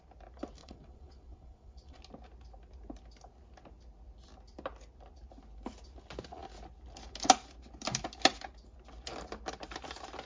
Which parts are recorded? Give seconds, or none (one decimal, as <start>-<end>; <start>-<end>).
0.0-0.6; 2.0-10.3